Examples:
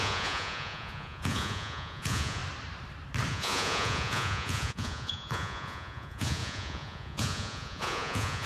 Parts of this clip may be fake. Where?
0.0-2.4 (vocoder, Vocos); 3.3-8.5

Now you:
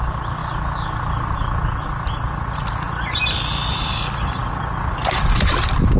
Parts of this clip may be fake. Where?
none

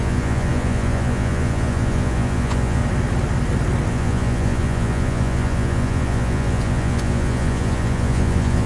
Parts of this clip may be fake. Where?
0.0-2.8 (vocoder, Vocos); 3.9-8.7

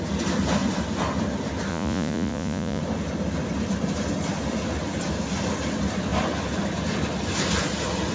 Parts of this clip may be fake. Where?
1.7-2.8 (vocoder, Vocos)